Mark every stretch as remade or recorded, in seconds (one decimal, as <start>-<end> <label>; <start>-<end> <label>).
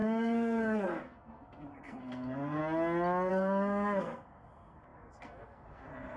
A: 0.0-2.6 remade; 2.6-3.3 recorded; 3.3-6.2 remade